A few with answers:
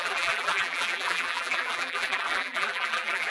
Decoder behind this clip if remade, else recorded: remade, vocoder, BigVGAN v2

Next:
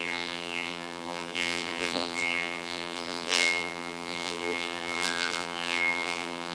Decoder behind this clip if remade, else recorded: remade, vocoder, BigVGAN v2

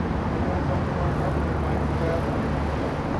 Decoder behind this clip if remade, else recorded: recorded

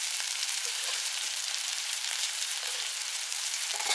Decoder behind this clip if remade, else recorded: remade, vocoder, BigVGAN v2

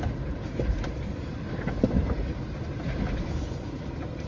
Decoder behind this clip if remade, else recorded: remade, vocoder, BigVGAN v2